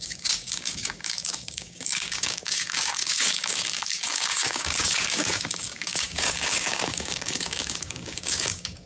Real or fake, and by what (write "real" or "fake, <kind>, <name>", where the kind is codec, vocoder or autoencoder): fake, codec, DAC